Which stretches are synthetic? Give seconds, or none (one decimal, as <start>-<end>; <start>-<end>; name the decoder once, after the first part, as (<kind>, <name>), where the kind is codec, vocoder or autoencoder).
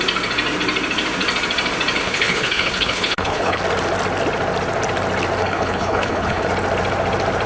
2.0-3.6 (codec, HILCodec); 5.4-6.5